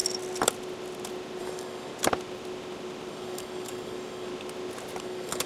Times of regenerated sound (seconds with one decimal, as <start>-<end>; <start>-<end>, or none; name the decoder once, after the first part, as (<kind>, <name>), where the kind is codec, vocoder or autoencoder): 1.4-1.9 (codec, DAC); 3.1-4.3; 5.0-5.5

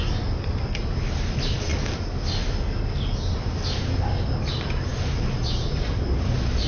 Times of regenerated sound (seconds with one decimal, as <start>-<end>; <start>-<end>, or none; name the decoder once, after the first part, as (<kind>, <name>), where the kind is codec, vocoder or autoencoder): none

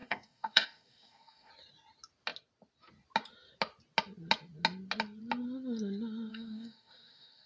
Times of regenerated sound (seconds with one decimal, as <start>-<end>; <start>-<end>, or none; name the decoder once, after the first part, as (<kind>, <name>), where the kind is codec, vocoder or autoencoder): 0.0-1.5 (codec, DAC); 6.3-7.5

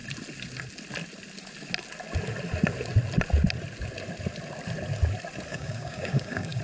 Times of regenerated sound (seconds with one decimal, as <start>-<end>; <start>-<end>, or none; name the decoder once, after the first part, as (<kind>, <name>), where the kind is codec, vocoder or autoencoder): 5.5-6.6 (codec, DAC)